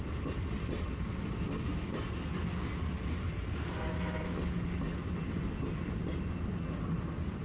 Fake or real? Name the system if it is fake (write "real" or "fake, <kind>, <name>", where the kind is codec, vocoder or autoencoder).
real